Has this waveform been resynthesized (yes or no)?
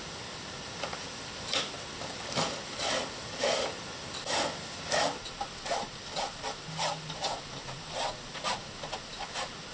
no